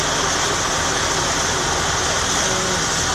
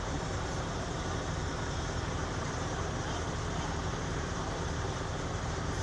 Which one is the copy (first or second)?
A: second